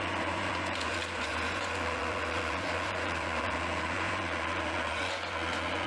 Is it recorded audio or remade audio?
remade